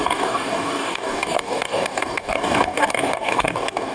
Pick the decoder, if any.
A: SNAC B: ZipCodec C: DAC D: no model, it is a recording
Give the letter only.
C